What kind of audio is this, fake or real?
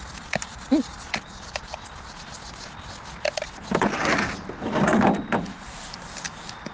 real